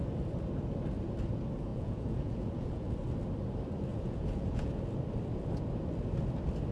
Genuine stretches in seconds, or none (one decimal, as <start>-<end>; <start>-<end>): 0.0-1.7; 2.9-3.9; 4.7-6.7